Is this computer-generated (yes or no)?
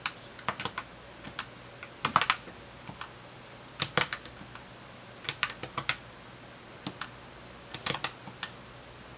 no